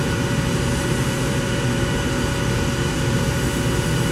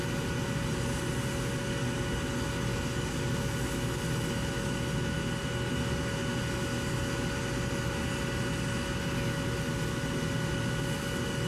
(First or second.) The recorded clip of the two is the second